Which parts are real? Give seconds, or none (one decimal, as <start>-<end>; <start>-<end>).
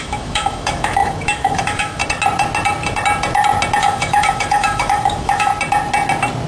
2.0-3.8; 5.5-6.5